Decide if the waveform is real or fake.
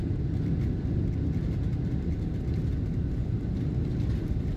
real